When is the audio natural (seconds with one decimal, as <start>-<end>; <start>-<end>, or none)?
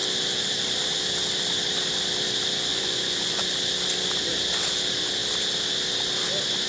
0.0-2.7; 3.4-6.7